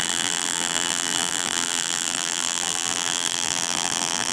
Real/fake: fake